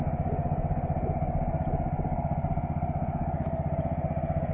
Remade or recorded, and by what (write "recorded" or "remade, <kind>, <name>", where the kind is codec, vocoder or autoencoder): recorded